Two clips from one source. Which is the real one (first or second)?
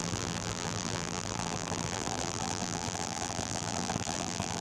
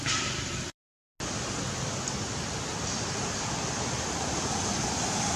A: second